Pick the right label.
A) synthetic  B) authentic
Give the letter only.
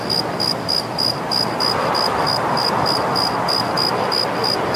B